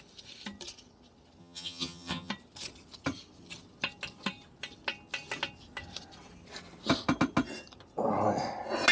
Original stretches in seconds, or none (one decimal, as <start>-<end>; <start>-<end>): 0.0-1.4; 2.3-8.9